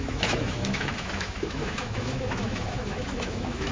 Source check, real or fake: fake